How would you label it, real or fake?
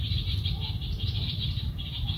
real